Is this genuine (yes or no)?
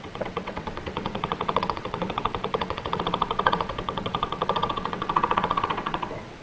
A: no